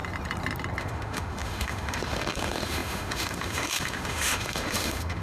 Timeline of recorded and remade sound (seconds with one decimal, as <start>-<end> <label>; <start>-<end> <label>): 0.0-0.8 recorded; 0.8-5.2 remade